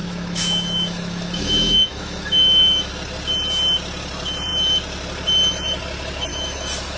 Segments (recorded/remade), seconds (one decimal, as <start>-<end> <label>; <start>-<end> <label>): 0.0-2.9 remade; 2.9-6.3 recorded; 6.3-7.0 remade

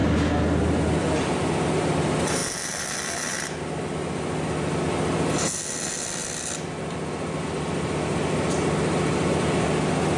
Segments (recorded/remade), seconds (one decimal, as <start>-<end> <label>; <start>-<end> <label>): 0.0-10.2 recorded

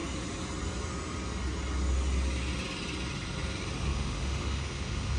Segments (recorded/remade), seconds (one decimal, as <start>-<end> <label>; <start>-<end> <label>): 0.0-3.9 recorded; 3.9-5.2 remade

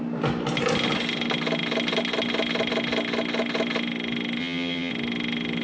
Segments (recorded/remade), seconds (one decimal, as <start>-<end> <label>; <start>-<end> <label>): 0.0-4.4 recorded; 4.4-4.9 remade; 4.9-5.6 recorded

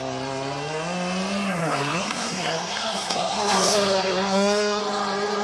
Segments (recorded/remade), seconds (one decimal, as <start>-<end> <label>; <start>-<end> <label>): 0.0-1.6 recorded; 1.6-4.8 remade; 4.8-5.4 recorded

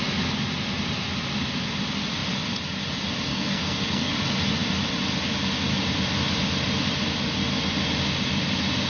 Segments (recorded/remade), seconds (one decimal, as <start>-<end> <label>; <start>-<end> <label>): 0.0-3.3 recorded; 3.3-4.1 remade; 4.1-8.9 recorded

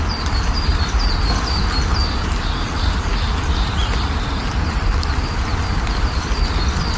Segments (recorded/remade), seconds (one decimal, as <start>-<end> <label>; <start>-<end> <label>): 0.0-0.7 remade; 0.7-2.3 recorded; 2.3-7.0 remade